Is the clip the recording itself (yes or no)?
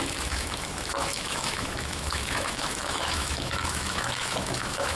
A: no